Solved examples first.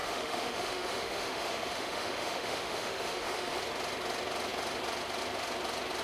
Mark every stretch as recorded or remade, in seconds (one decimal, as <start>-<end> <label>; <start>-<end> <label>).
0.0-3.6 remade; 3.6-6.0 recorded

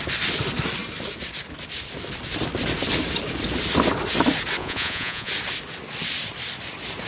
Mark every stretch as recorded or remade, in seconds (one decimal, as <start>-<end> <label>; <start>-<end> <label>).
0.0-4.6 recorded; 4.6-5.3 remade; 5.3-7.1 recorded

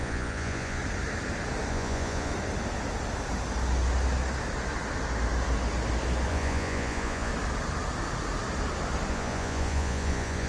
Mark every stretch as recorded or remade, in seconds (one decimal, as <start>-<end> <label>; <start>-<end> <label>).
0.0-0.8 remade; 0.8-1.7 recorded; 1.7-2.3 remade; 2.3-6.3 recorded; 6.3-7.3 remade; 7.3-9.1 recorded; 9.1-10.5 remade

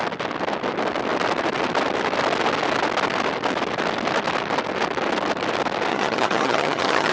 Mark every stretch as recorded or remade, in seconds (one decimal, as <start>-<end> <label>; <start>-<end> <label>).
0.0-5.9 recorded; 5.9-7.1 remade